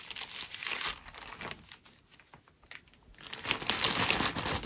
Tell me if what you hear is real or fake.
real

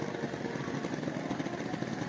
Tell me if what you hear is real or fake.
real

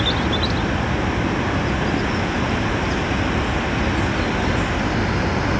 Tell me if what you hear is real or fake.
real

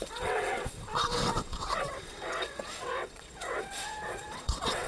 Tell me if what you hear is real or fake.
fake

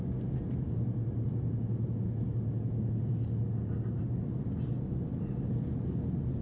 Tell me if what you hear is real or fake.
real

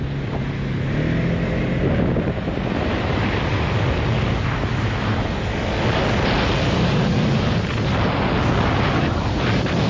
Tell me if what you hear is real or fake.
real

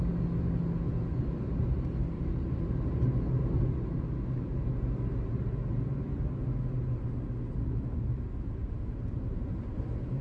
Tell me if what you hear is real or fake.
real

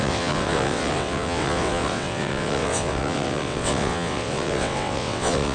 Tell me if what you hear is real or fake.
fake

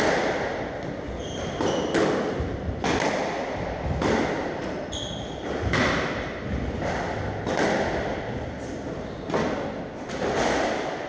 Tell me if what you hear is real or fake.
real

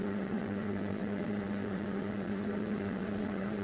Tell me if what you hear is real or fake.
fake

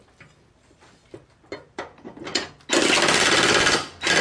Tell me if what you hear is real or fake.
real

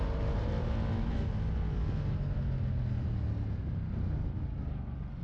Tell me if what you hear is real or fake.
real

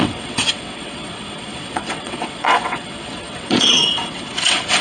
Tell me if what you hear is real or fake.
fake